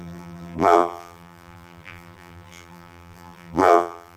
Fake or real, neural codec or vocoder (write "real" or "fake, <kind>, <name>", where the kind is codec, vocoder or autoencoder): fake, vocoder, BigVGAN v2